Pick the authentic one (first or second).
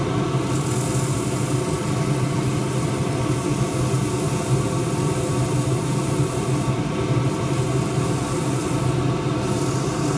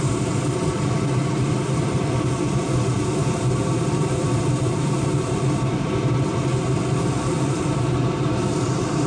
first